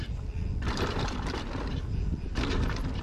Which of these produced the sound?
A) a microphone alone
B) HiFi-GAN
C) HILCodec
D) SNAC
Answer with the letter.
A